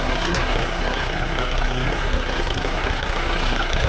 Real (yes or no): no